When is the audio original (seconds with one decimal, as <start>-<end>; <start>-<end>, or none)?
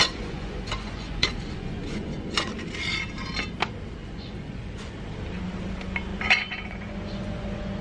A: 2.5-4.0; 4.9-6.1